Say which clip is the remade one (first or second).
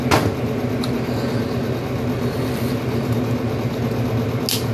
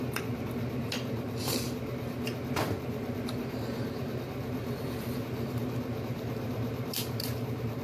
second